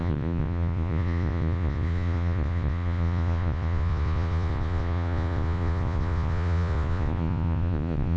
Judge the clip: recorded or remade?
remade